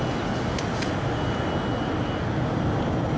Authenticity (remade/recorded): recorded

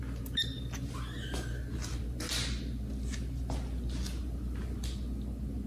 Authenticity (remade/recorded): recorded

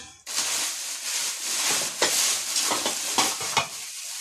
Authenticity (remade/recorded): recorded